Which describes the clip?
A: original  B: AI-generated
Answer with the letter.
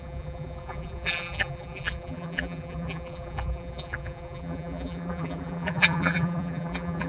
B